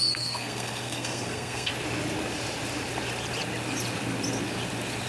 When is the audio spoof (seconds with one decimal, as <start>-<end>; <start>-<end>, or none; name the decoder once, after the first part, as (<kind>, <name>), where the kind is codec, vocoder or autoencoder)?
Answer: 0.0-1.7 (codec, SNAC)